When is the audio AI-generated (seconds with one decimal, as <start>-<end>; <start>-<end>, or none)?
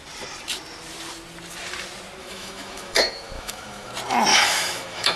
2.2-3.9; 4.3-5.2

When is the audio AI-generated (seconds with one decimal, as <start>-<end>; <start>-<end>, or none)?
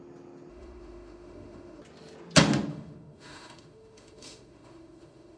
0.5-1.8; 2.7-5.4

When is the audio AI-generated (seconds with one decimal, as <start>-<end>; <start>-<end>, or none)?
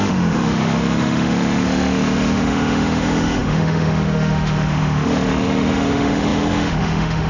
0.0-7.3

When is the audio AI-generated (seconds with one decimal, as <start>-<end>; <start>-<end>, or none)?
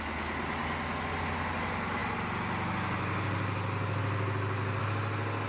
none